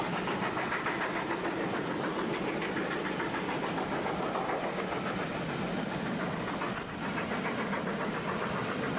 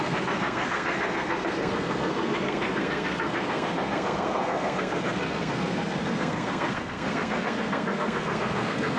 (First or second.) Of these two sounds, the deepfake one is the second